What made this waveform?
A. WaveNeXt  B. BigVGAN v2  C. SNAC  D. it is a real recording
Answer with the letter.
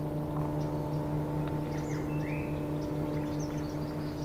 D